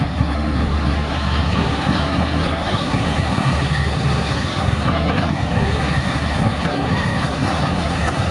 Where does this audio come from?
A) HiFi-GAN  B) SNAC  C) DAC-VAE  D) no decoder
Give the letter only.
B